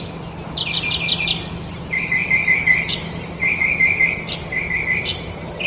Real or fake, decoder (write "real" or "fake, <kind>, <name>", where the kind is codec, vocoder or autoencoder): real